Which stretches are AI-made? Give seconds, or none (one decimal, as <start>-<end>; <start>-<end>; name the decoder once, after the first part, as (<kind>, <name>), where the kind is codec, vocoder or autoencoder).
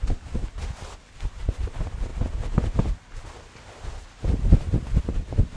none